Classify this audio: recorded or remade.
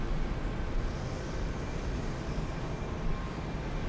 recorded